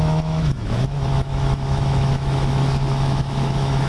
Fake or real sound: fake